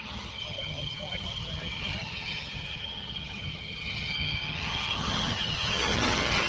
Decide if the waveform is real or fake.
fake